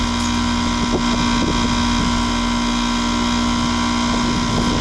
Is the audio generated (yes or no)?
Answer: no